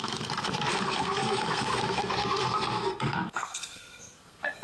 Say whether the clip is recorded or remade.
remade